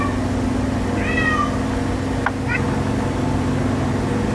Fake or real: real